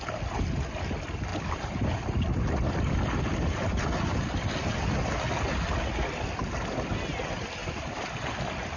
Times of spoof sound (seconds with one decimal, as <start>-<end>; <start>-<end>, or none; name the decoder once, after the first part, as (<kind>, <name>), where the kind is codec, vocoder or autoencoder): 1.3-4.9 (vocoder, BigVGAN v2); 7.6-8.8